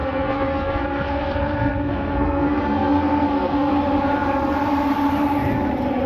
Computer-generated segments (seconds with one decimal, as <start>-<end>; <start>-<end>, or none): 0.0-3.7